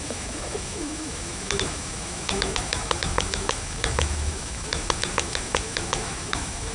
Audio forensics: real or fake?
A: fake